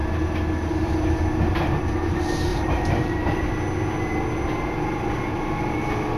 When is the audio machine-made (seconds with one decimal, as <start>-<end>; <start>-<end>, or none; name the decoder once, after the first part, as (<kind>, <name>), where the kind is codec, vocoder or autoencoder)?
2.5-3.4 (vocoder, BigVGAN v2); 5.3-5.8